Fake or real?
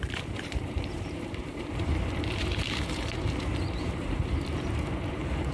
fake